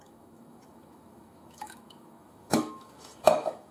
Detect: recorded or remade remade